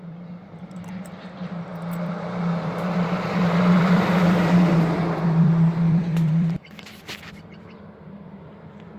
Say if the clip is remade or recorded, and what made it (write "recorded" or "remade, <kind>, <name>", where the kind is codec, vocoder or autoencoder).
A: remade, vocoder, BigVGAN v2